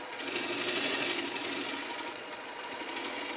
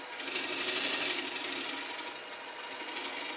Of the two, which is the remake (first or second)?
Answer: first